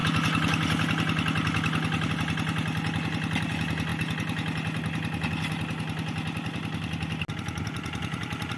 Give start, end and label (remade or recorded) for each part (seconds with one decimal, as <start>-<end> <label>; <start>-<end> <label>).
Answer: 0.0-8.6 recorded